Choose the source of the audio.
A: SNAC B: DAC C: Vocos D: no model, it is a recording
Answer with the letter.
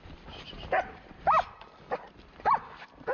D